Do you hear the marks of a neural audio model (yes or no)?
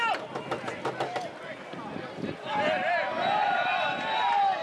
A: no